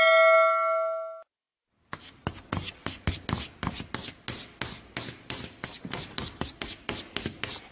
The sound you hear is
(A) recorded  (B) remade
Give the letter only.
A